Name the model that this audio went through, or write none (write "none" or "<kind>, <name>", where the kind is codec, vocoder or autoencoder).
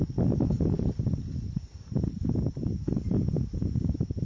none